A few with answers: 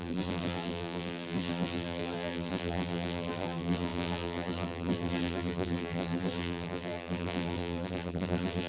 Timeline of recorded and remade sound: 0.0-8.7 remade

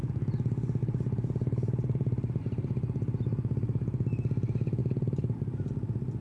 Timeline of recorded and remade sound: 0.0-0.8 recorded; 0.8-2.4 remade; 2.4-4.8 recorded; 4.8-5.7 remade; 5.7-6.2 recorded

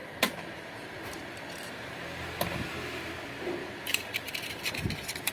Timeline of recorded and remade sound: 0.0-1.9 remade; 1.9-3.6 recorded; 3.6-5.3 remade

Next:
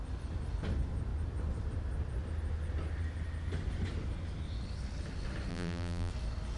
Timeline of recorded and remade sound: 0.0-5.5 recorded; 5.5-6.1 remade; 6.1-6.6 recorded

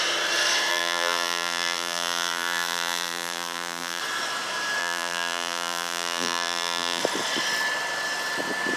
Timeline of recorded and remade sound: 0.0-0.7 recorded; 0.7-4.0 remade; 4.0-4.8 recorded; 4.8-7.0 remade; 7.0-8.8 recorded

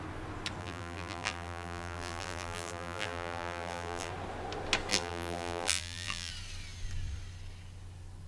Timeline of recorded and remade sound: 0.0-0.6 recorded; 0.6-4.1 remade; 4.1-4.9 recorded; 4.9-6.3 remade; 6.3-8.3 recorded

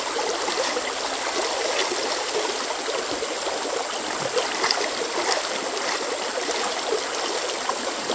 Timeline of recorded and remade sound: 0.0-8.1 recorded